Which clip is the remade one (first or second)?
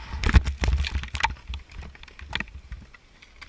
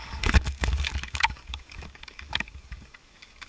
second